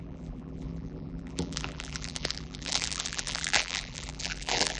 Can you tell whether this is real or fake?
fake